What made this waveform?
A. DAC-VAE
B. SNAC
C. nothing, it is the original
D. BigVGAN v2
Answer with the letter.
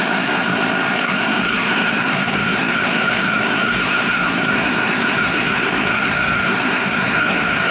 B